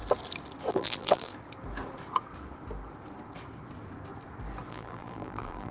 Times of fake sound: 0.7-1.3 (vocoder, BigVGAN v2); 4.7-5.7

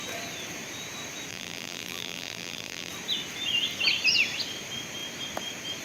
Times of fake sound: 1.3-2.9 (vocoder, BigVGAN v2)

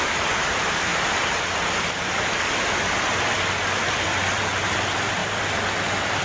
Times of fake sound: 0.0-6.2 (vocoder, BigVGAN v2)

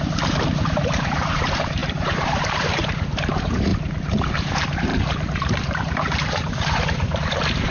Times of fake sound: 0.0-3.7 (vocoder, BigVGAN v2); 4.3-7.7

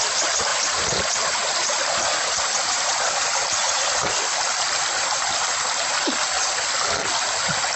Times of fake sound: 0.5-3.8 (vocoder, BigVGAN v2)

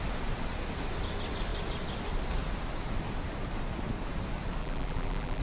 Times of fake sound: 4.6-5.4 (vocoder, BigVGAN v2)

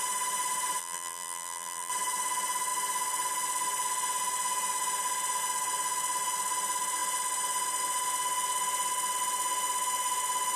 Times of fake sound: 0.8-1.9 (vocoder, BigVGAN v2)